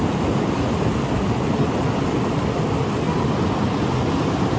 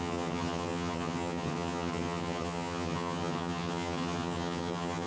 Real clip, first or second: first